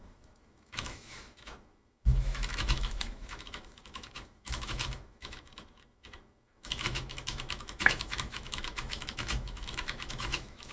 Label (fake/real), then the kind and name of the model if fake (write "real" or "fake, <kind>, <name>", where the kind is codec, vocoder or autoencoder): fake, autoencoder, DAC-VAE